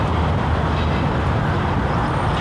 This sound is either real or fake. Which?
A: fake